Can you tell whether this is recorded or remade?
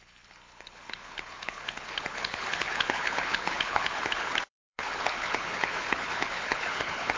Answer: remade